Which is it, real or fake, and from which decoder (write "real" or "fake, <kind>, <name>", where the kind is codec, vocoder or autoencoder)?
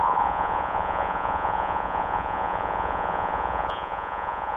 fake, vocoder, Vocos